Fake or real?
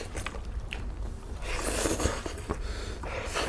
fake